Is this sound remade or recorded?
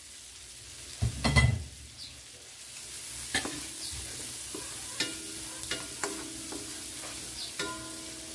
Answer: recorded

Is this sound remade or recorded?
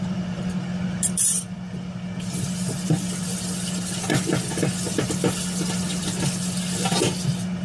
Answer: recorded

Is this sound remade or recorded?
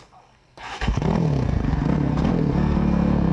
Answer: remade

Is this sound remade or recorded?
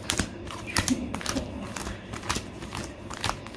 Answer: remade